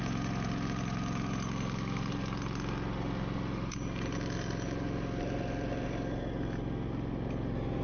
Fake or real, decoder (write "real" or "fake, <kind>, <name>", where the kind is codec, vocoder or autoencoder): real